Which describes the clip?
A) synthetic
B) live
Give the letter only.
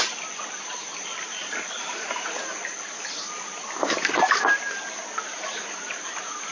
B